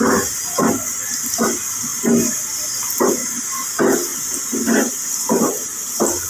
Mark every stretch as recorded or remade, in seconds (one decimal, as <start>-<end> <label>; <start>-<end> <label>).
0.0-6.3 recorded